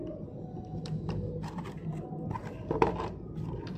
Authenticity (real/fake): real